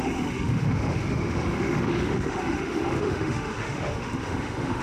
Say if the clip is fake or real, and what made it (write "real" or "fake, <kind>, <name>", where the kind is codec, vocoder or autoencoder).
fake, autoencoder, DAC-VAE